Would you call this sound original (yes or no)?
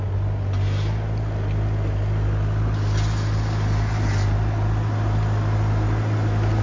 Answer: yes